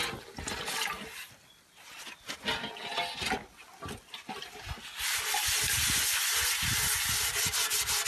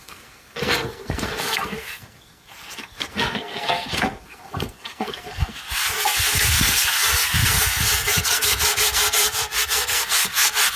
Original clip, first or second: first